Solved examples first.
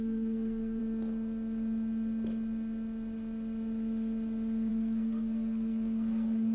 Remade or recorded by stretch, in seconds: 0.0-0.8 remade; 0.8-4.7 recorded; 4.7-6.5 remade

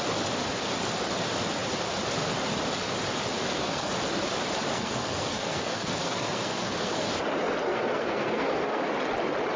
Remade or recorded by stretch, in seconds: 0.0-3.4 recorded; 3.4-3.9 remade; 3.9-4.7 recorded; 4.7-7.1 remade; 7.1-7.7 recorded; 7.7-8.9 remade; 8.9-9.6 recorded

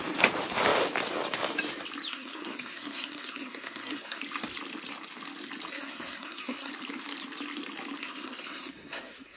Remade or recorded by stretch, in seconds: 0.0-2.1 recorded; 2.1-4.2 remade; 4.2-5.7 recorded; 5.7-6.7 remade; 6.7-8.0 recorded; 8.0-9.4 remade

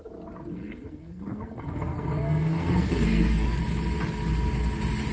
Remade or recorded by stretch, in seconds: 0.0-0.5 recorded; 0.5-3.6 remade; 3.6-5.1 recorded

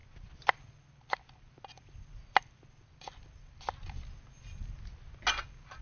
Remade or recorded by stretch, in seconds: 0.0-5.8 recorded

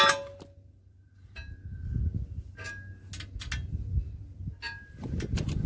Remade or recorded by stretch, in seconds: 0.0-5.7 recorded

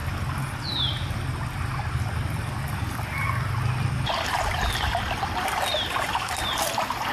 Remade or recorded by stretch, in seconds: 0.0-7.1 recorded